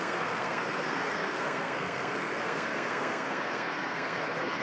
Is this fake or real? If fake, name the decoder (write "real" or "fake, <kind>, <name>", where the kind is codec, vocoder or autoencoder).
fake, codec, SNAC